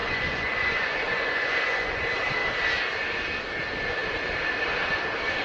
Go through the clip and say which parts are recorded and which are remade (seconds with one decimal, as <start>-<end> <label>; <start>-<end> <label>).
0.0-2.0 remade; 2.0-5.4 recorded